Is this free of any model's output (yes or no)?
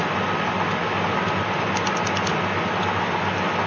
yes